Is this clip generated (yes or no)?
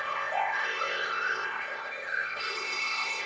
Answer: yes